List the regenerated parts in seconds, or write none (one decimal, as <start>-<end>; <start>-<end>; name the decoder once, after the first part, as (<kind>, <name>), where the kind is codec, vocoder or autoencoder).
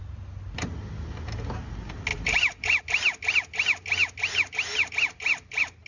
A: 2.1-2.8 (vocoder, BigVGAN v2)